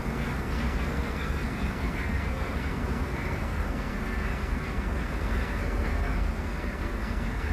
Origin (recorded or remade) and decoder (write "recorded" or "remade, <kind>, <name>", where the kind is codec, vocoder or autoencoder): remade, codec, SNAC